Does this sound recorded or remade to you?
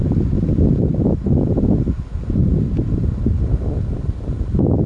recorded